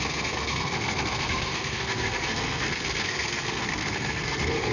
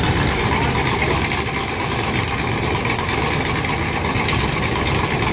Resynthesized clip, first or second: first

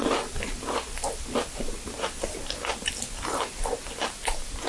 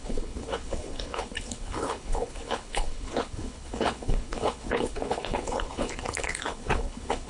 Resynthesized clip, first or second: second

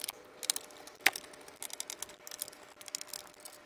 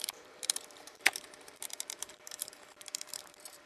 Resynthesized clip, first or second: second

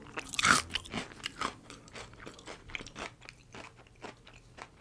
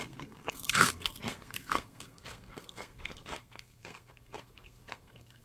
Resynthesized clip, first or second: second